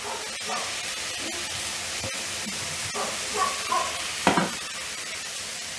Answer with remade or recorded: recorded